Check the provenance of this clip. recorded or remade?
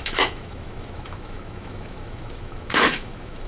remade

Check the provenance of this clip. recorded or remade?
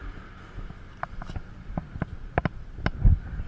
recorded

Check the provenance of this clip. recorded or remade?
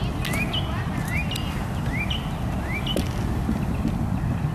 recorded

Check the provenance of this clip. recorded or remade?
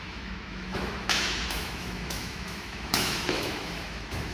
remade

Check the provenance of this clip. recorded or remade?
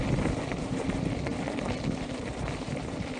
recorded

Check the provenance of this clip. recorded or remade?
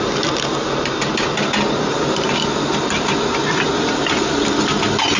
recorded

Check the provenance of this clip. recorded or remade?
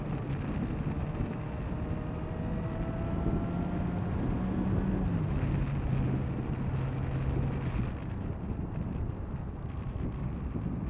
recorded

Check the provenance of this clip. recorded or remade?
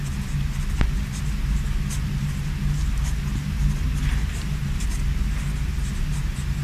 recorded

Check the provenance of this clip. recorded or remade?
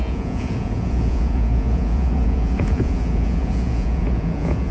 remade